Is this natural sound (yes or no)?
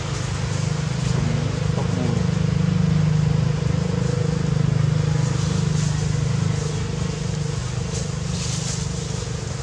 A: yes